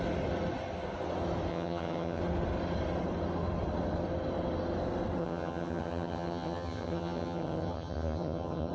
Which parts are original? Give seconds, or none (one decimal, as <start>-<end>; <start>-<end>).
0.0-1.5; 2.2-5.2